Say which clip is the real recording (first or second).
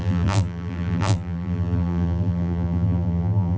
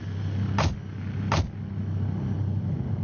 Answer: second